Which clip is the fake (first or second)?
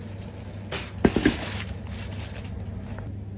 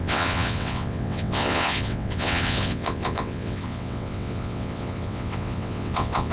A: second